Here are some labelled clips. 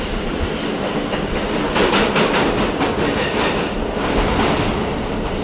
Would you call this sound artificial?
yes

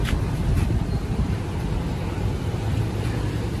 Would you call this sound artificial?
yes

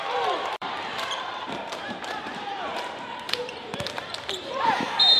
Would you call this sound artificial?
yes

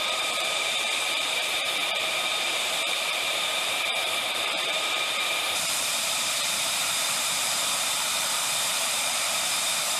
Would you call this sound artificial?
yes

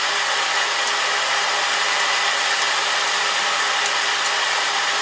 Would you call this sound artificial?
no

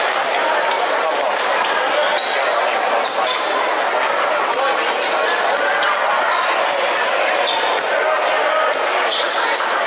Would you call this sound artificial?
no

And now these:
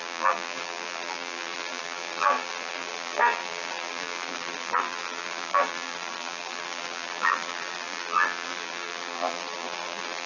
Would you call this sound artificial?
yes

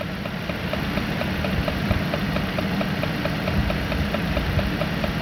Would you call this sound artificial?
no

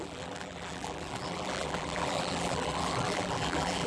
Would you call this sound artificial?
yes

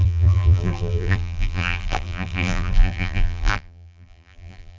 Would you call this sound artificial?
yes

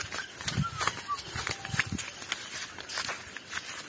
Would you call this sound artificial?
no